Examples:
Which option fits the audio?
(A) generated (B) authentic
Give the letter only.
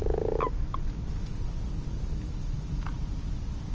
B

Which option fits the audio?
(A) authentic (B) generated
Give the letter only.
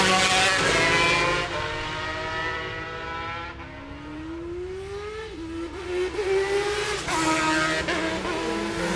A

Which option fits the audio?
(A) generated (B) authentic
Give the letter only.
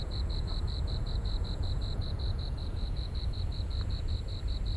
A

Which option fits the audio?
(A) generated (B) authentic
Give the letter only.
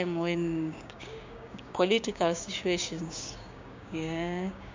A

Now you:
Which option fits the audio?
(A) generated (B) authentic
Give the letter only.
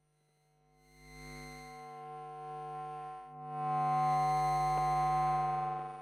B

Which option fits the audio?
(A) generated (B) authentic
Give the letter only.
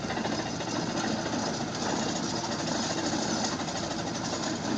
B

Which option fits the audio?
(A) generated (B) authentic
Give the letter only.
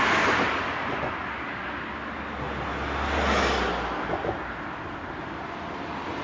B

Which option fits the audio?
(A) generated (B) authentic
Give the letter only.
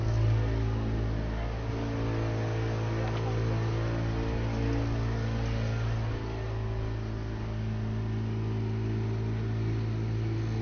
B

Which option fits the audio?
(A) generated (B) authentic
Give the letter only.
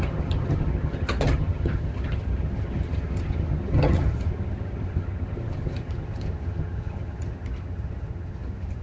A